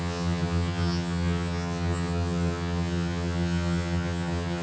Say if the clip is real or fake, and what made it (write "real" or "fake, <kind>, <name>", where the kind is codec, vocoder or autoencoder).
fake, vocoder, HiFi-GAN